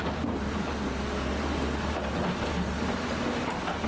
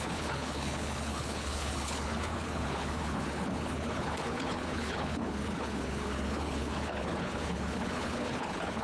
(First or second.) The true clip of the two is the first